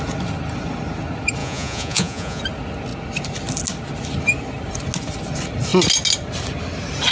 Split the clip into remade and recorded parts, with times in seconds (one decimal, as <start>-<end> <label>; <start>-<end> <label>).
0.0-1.4 recorded; 1.4-2.4 remade; 2.4-7.1 recorded